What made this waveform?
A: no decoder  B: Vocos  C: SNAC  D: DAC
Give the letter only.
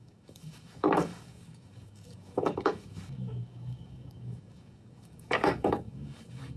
D